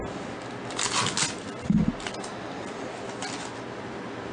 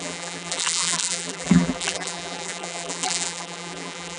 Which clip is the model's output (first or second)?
second